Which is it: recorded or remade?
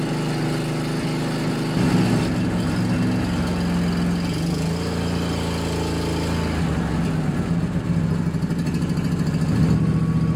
recorded